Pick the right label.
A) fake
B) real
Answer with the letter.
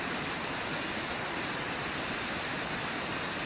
B